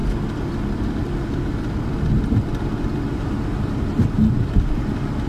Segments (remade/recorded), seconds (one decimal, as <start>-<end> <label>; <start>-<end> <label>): 0.0-5.3 recorded